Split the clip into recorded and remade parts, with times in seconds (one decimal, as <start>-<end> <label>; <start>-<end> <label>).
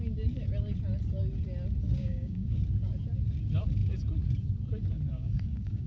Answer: 0.0-2.0 recorded; 2.0-2.6 remade; 2.6-5.1 recorded; 5.1-5.9 remade